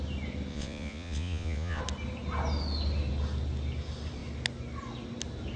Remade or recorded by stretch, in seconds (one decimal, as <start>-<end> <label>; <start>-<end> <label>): 0.0-0.5 recorded; 0.5-1.8 remade; 1.8-5.6 recorded